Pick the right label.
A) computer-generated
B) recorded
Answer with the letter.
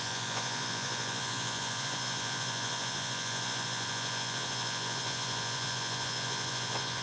A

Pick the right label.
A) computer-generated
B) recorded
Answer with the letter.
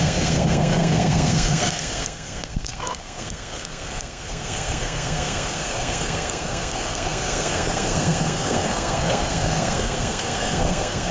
A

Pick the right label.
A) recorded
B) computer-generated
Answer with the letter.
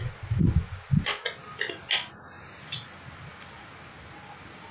A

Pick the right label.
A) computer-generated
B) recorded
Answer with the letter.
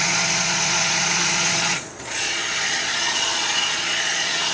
A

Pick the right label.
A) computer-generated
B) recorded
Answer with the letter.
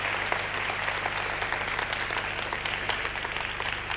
B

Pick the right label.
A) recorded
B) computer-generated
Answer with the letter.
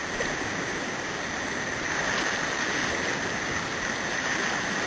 A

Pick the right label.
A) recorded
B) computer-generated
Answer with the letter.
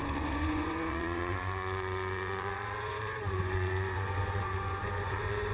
B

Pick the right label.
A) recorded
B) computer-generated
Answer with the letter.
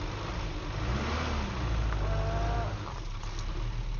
A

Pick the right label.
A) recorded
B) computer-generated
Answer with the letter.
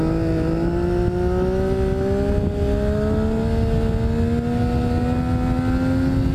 A